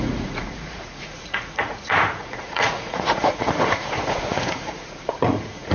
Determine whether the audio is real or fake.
fake